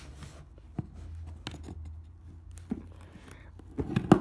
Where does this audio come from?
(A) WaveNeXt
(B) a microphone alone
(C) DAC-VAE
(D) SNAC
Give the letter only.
B